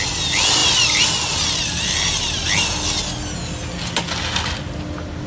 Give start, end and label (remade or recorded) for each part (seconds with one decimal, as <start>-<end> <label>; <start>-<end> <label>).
0.0-5.3 recorded